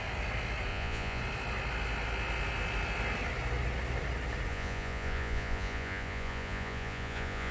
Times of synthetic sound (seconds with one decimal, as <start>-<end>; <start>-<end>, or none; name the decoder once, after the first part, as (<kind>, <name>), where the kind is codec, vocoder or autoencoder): 0.7-1.2 (vocoder, Vocos); 4.5-7.5